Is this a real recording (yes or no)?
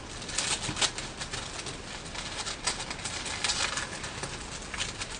yes